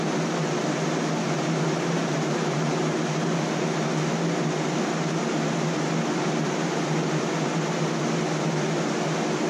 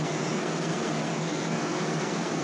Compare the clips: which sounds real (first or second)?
first